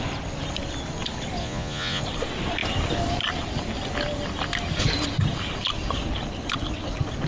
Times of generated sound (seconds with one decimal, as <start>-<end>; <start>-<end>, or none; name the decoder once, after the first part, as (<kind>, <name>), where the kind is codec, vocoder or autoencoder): 1.4-2.0 (vocoder, Vocos)